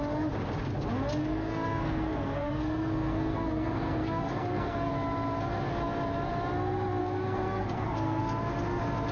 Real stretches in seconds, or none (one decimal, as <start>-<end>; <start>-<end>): 0.0-1.2; 4.9-7.0; 8.2-9.1